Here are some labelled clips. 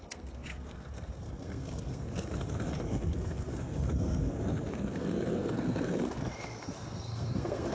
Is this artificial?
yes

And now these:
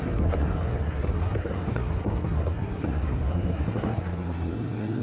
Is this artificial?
yes